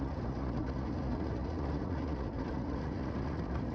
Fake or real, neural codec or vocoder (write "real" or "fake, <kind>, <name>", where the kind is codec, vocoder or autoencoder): fake, vocoder, Vocos